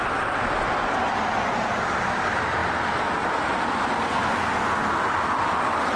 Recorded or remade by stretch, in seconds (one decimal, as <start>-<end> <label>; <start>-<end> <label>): 0.0-6.0 recorded